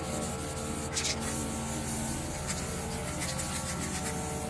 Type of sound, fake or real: real